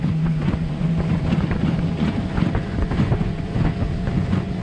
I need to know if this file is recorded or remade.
remade